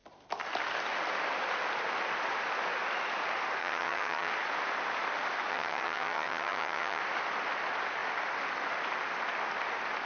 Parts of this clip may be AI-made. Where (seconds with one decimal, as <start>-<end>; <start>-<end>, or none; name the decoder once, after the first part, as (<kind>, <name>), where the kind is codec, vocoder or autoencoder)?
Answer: 3.6-4.3 (vocoder, HiFi-GAN); 5.5-7.0